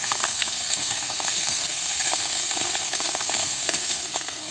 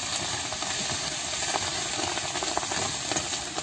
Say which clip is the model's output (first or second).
first